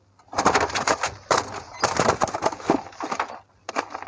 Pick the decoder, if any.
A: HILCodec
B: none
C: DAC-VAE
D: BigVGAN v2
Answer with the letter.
B